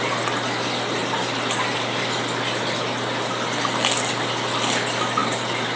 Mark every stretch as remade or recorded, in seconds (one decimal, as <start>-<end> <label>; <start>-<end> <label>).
0.0-5.8 recorded